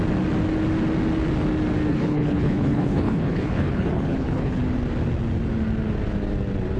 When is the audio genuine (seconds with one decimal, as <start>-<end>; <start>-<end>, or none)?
0.0-1.9; 4.6-6.8